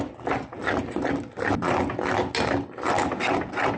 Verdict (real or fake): real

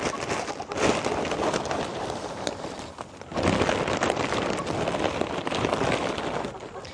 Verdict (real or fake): real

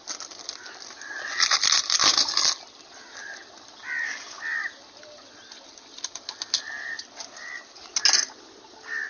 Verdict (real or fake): real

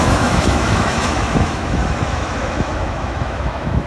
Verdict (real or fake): fake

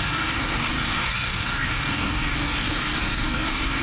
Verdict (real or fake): fake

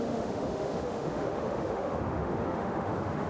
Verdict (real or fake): fake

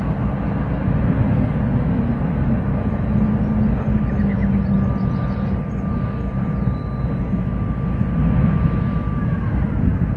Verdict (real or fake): real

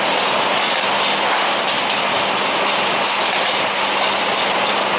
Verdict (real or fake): real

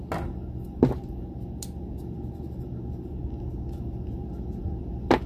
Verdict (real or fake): real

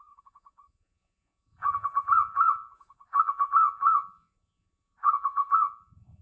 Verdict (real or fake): fake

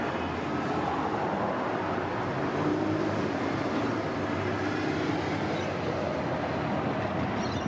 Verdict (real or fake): real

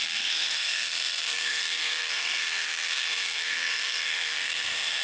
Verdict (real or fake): fake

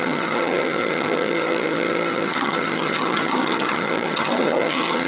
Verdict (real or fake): fake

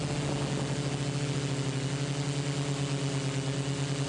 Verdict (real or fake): real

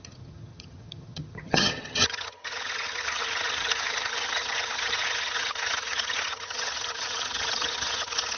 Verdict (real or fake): fake